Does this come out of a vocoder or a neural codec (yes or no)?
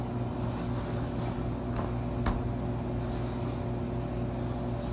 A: no